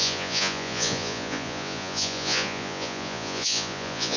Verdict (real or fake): fake